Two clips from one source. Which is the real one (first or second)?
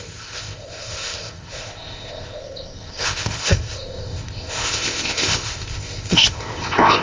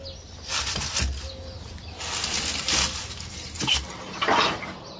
second